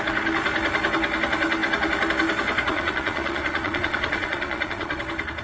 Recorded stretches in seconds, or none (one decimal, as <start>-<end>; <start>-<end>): 0.0-2.7; 5.0-5.4